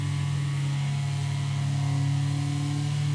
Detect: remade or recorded recorded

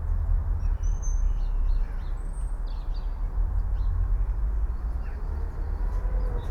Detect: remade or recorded recorded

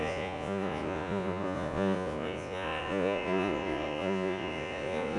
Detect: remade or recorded remade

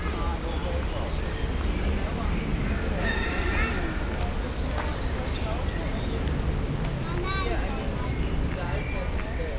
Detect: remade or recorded recorded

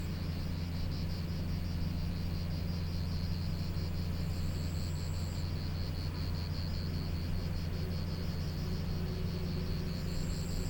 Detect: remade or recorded recorded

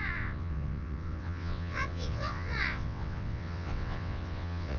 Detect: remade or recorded remade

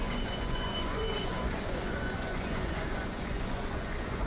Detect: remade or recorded remade